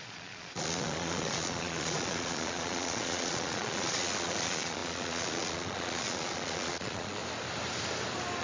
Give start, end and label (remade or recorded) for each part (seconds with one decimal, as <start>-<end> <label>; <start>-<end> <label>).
0.0-7.2 remade; 7.2-8.4 recorded